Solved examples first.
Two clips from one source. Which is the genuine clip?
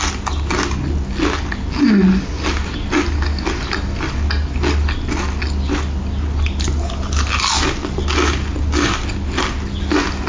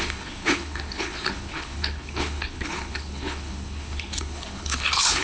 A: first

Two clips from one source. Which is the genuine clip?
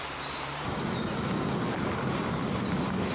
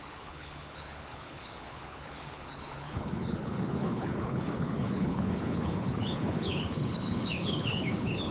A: first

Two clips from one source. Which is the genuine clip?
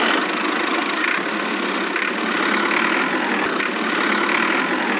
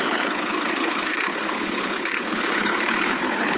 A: first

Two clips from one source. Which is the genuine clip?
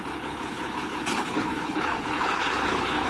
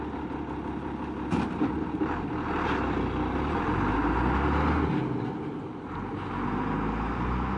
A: second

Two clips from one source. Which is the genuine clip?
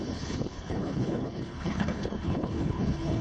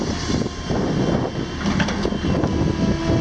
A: second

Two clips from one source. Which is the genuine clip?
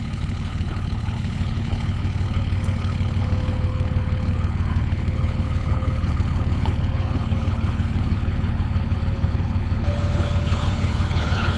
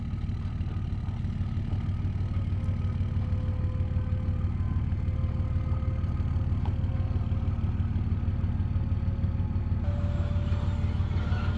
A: second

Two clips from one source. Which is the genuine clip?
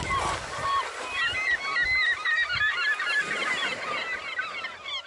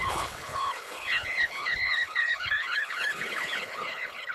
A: first